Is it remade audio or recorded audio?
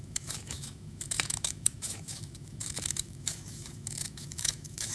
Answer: remade